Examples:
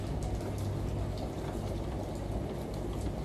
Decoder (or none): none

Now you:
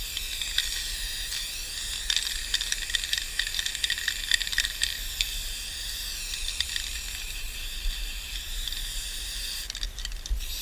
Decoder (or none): none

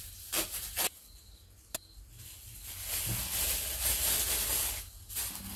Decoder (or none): none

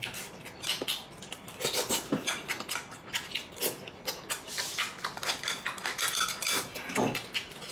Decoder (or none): none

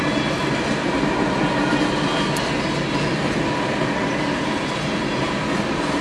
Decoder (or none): none